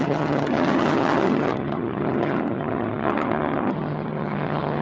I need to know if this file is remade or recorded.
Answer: remade